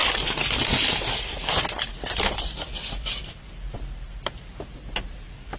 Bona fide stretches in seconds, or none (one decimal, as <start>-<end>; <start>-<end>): 0.0-5.6